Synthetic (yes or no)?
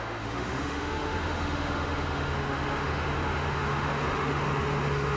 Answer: yes